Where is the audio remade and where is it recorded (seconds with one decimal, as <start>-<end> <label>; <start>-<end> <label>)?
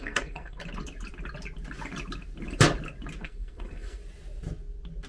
0.0-0.6 remade; 0.6-3.2 recorded; 3.2-4.0 remade; 4.0-5.1 recorded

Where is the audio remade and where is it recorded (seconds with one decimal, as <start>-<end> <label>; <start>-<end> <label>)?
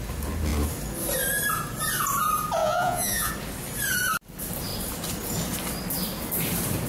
0.0-2.6 recorded; 2.6-3.3 remade; 3.3-6.9 recorded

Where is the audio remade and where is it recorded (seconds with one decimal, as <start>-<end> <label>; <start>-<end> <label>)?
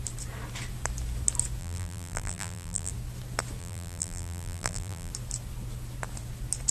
0.0-1.6 recorded; 1.6-2.9 remade; 2.9-3.6 recorded; 3.6-5.1 remade; 5.1-6.7 recorded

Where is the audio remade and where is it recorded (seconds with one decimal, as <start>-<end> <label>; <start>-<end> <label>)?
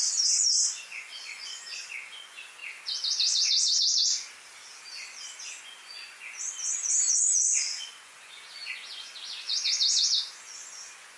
0.0-2.6 remade; 2.6-5.4 recorded; 5.4-11.2 remade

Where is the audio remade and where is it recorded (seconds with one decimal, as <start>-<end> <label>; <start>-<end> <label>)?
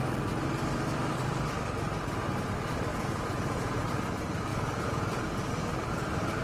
0.0-2.9 recorded; 2.9-3.8 remade; 3.8-4.5 recorded; 4.5-5.3 remade; 5.3-6.4 recorded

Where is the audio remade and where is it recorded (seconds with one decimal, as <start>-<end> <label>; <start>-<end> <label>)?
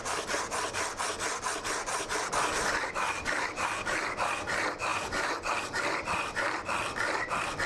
0.0-7.7 recorded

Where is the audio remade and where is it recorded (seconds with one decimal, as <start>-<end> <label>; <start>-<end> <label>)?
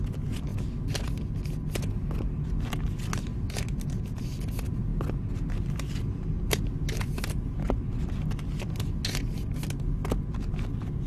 0.0-11.1 recorded